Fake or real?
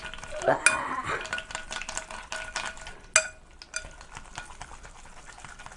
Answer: real